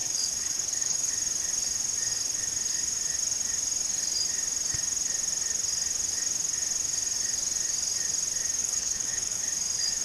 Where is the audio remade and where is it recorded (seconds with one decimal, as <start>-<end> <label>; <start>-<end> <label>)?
0.0-1.1 remade; 1.1-8.6 recorded; 8.6-9.4 remade; 9.4-10.0 recorded